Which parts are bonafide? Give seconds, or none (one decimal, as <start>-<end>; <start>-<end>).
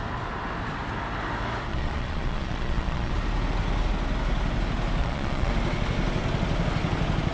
0.0-1.7; 3.1-5.0; 5.5-7.3